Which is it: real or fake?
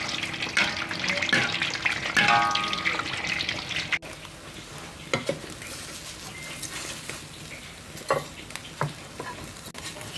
real